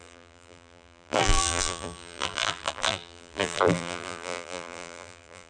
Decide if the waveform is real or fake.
fake